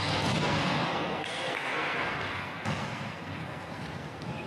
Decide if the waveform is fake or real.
fake